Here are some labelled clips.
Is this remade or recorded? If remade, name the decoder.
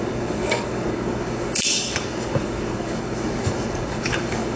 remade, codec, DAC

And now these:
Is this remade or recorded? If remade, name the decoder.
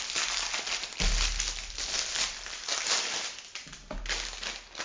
recorded